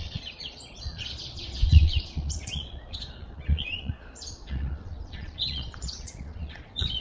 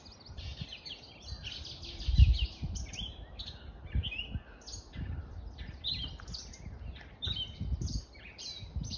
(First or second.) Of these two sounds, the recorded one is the second